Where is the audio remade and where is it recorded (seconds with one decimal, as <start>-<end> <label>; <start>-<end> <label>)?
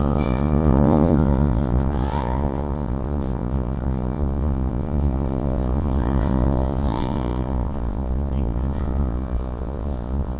0.0-10.4 remade